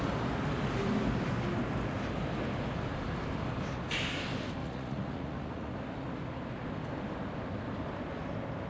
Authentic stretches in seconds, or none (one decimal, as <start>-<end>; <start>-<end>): 0.0-4.6; 5.7-8.7